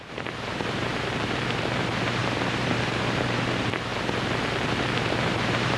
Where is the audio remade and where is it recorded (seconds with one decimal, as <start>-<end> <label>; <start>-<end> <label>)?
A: 0.0-3.9 remade; 3.9-4.8 recorded; 4.8-5.8 remade